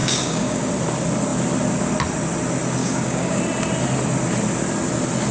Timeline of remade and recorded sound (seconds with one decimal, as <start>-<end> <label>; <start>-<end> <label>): 0.0-0.7 remade; 0.7-2.8 recorded; 2.8-3.4 remade; 3.4-5.3 recorded